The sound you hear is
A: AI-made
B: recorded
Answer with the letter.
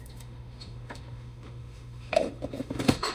A